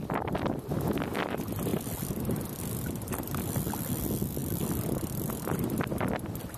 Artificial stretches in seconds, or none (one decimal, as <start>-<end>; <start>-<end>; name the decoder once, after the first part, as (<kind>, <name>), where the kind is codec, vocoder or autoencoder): none